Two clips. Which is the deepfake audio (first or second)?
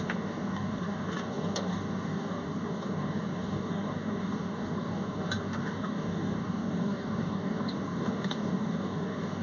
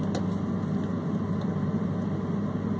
first